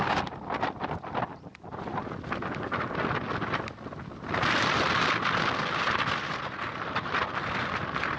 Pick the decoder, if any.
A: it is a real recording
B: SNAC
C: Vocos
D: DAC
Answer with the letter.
A